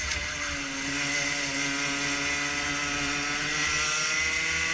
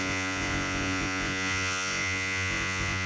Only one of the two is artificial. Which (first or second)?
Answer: second